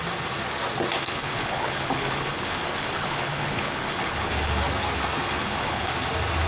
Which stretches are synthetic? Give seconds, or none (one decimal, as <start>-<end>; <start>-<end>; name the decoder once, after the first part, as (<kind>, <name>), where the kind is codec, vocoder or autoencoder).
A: 1.0-4.5 (codec, HILCodec); 5.3-5.9